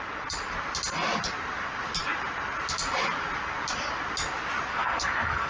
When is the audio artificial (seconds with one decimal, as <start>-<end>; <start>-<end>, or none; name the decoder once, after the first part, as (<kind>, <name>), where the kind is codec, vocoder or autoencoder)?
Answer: 4.7-5.5 (codec, SNAC)